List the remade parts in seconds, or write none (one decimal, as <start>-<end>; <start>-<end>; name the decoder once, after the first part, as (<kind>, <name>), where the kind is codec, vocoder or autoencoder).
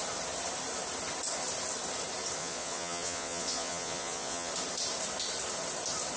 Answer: 2.4-4.5 (vocoder, Vocos)